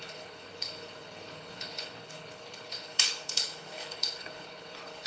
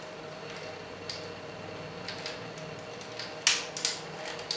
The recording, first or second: second